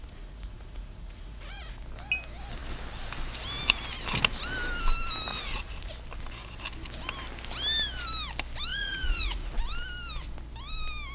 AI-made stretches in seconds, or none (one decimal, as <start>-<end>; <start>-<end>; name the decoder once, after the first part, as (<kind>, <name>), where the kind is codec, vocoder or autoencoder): 0.0-1.8 (vocoder, Vocos); 5.3-5.9; 8.7-9.5